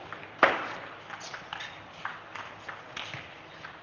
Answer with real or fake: real